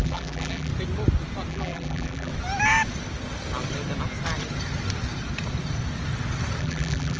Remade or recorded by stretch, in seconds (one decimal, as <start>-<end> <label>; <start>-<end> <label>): 0.0-0.7 remade; 0.7-1.5 recorded; 1.5-2.3 remade; 2.3-6.6 recorded; 6.6-7.2 remade